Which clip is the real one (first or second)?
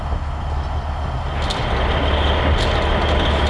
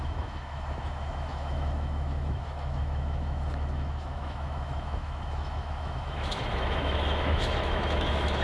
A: first